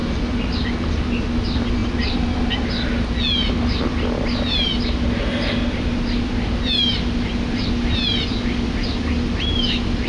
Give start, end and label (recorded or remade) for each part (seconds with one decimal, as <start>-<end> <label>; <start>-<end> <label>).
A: 0.0-10.1 recorded